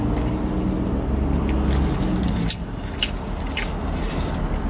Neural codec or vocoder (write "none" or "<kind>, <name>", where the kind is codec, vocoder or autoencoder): none